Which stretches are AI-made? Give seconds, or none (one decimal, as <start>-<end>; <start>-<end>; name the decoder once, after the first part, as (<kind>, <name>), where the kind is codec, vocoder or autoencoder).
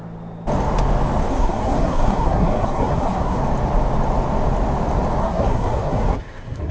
1.3-3.4 (codec, SNAC); 5.2-6.7